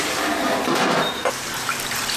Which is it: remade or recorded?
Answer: remade